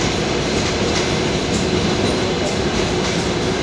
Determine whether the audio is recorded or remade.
remade